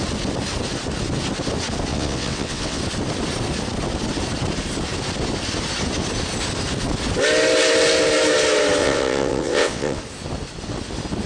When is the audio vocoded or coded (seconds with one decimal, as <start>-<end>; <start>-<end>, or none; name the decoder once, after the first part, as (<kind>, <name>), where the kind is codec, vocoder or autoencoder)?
1.9-2.8 (vocoder, WaveNeXt); 8.8-10.0